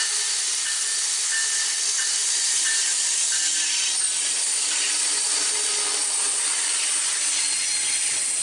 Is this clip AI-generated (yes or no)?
no